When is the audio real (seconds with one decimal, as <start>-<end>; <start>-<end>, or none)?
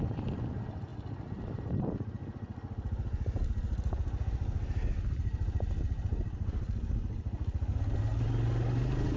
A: 0.0-0.9; 1.6-9.2